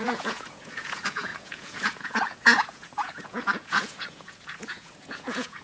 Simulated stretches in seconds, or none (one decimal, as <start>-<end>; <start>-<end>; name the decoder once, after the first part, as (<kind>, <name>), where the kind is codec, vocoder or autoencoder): 0.0-5.6 (vocoder, Vocos)